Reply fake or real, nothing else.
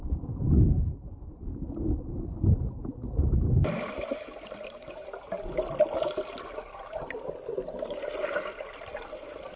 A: real